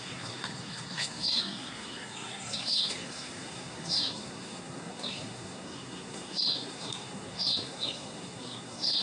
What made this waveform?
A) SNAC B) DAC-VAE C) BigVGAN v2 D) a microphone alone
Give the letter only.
A